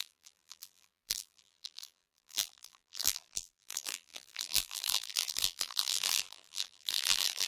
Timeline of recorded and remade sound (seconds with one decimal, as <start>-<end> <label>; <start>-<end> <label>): 0.0-7.5 remade